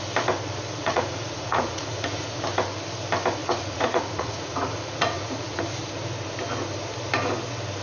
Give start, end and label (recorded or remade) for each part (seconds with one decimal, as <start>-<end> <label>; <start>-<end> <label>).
0.0-0.8 recorded; 0.8-2.4 remade; 2.4-3.4 recorded; 3.4-5.6 remade; 5.6-7.8 recorded